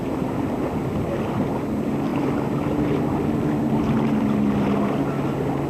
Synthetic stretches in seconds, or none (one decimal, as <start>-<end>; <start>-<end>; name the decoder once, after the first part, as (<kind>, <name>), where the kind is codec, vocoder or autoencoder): none